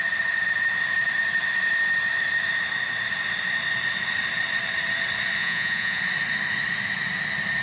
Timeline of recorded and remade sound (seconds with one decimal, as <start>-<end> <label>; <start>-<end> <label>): 0.0-5.4 recorded; 5.4-6.0 remade; 6.0-7.6 recorded